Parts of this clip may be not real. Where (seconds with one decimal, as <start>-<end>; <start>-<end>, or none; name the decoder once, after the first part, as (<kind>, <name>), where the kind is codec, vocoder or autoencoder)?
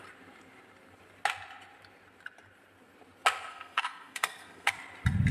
3.5-4.7 (codec, SNAC)